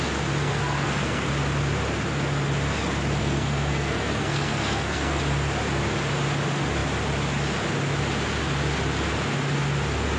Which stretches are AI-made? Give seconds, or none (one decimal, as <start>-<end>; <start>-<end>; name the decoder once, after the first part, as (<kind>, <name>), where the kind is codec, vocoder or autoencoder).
0.4-1.3 (codec, SNAC); 3.2-5.2

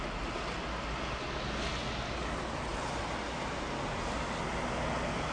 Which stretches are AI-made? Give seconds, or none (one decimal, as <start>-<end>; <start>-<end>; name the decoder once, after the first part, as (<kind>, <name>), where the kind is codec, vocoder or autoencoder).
none

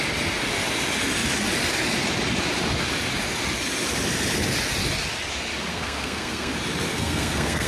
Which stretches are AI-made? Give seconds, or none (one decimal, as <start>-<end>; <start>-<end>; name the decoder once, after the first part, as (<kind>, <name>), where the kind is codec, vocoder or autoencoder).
5.7-6.5 (codec, SNAC); 6.9-7.7

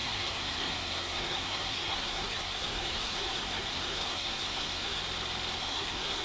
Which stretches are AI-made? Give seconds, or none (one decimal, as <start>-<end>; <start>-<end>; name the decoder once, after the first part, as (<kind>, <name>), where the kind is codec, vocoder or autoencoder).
0.0-5.0 (codec, SNAC); 5.6-6.2